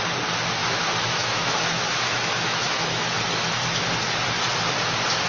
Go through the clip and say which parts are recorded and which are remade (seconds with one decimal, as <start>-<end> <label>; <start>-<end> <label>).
0.0-0.6 recorded; 0.6-3.8 remade; 3.8-5.3 recorded